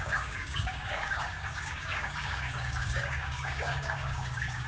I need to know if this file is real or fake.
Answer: fake